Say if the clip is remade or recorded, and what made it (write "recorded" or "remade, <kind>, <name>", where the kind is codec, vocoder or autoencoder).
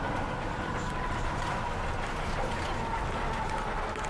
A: recorded